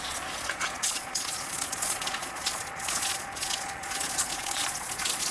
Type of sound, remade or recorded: remade